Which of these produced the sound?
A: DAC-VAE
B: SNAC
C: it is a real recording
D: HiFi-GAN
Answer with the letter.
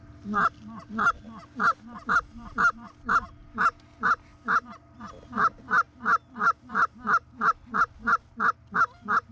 C